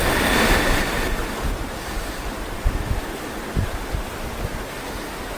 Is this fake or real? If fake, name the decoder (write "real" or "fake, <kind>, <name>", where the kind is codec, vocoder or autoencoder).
real